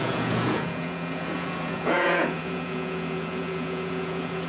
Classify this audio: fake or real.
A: fake